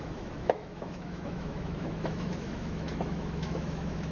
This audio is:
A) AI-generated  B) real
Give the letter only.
A